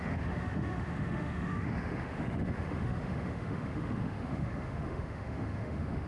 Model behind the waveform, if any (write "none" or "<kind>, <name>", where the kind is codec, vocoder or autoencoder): autoencoder, DAC-VAE